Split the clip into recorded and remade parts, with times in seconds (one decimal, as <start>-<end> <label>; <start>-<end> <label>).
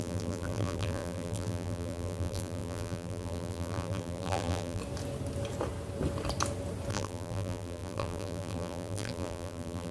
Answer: 0.0-4.8 remade; 4.8-6.9 recorded; 6.9-9.9 remade